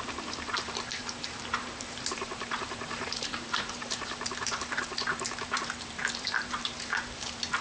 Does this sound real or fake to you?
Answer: fake